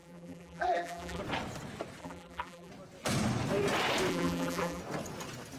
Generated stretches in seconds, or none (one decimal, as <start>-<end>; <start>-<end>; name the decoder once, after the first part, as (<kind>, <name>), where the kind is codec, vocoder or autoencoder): 0.0-1.2 (vocoder, BigVGAN v2); 2.0-2.7; 4.1-4.8

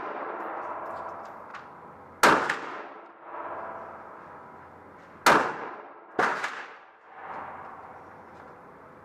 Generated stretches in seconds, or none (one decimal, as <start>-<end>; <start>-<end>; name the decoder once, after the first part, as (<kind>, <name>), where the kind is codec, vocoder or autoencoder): 0.0-1.5 (vocoder, BigVGAN v2); 5.6-7.2; 7.8-9.0

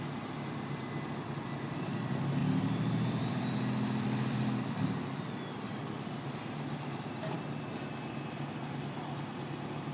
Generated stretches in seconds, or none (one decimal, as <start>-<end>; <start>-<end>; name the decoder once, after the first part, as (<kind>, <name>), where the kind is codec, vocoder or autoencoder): 2.4-7.6 (vocoder, BigVGAN v2)

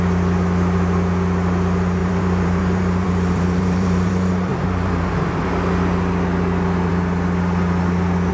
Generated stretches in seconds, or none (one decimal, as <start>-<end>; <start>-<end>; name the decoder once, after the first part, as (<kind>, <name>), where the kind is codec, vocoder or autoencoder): 2.0-4.1 (vocoder, BigVGAN v2); 4.5-5.5

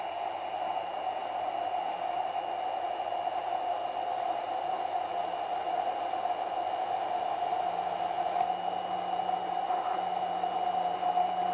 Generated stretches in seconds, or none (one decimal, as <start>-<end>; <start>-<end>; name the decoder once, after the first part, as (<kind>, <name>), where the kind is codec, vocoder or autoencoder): none

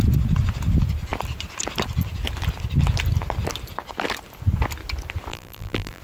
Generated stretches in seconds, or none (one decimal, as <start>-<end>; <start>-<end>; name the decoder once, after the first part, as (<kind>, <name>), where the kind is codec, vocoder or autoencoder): 5.3-6.0 (vocoder, BigVGAN v2)